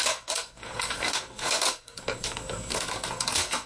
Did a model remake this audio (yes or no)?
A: yes